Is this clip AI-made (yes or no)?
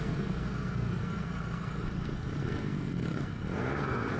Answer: yes